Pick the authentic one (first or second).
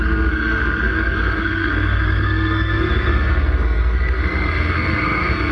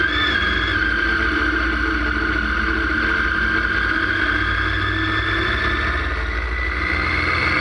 second